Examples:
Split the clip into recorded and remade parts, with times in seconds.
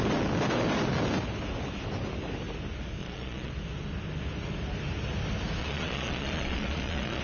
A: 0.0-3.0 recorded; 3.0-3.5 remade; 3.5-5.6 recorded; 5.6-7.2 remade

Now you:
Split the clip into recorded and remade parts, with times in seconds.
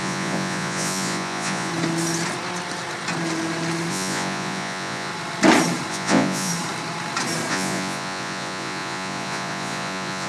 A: 0.0-1.7 remade; 1.7-3.9 recorded; 3.9-5.1 remade; 5.1-5.9 recorded; 5.9-6.5 remade; 6.5-7.5 recorded; 7.5-10.3 remade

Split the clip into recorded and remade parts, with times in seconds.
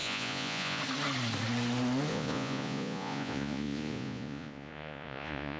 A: 0.0-0.8 remade; 0.8-2.1 recorded; 2.1-5.6 remade